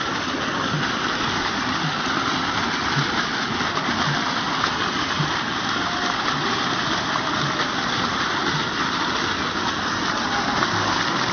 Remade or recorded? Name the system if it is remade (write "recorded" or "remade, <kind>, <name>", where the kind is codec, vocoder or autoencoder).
recorded